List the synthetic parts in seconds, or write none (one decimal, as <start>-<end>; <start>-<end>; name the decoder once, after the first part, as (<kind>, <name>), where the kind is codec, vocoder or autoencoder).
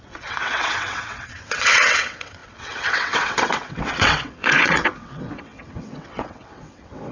0.0-7.1 (vocoder, WaveNeXt)